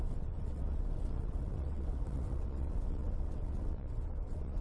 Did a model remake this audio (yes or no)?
yes